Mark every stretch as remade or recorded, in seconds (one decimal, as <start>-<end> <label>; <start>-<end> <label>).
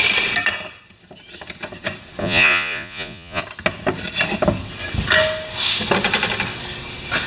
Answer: 0.0-2.2 recorded; 2.2-3.4 remade; 3.4-7.3 recorded